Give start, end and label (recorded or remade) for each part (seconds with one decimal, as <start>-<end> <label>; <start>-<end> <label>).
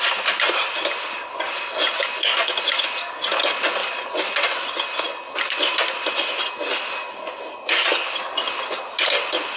0.0-9.6 recorded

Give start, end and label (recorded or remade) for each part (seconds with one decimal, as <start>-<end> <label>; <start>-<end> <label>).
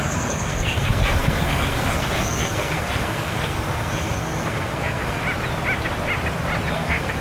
0.0-5.2 remade; 5.2-6.7 recorded; 6.7-7.2 remade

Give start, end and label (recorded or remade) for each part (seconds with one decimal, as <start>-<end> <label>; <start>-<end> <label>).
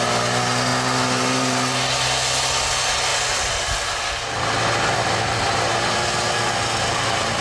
0.0-7.4 recorded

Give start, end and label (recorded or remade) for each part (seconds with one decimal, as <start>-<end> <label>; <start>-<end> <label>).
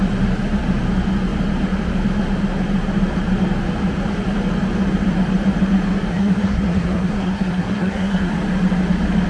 0.0-6.1 recorded; 6.1-8.3 remade; 8.3-9.3 recorded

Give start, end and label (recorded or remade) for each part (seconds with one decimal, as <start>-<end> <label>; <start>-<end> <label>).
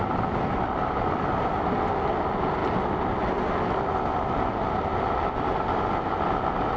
0.0-6.8 recorded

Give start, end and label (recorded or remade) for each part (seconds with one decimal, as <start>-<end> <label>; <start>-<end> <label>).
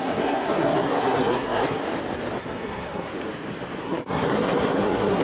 0.0-1.8 remade; 1.8-2.4 recorded; 2.4-3.1 remade; 3.1-3.8 recorded; 3.8-5.2 remade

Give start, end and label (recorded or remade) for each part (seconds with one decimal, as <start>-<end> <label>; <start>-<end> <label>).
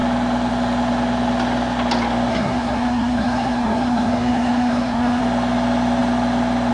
0.0-2.3 recorded; 2.3-5.2 remade; 5.2-6.7 recorded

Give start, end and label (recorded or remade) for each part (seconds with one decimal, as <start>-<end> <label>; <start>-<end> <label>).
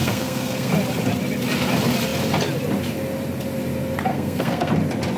0.0-0.7 remade; 0.7-4.1 recorded; 4.1-4.7 remade; 4.7-5.2 recorded